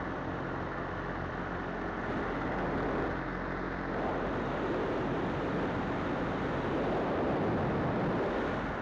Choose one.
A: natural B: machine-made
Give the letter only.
A